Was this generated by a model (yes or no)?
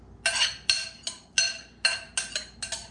no